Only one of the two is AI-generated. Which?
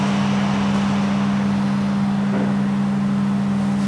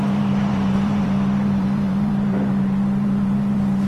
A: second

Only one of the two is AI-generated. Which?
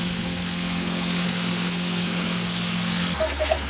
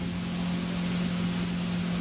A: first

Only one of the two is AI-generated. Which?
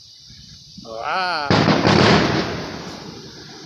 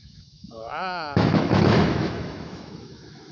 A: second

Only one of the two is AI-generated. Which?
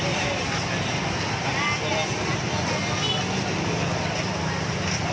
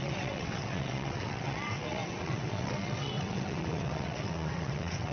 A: second